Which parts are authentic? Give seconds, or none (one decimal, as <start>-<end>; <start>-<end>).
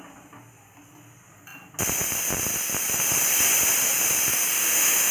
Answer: 0.0-4.3